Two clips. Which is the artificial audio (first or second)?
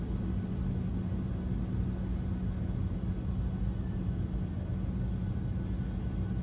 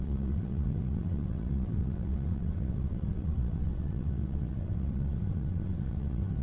second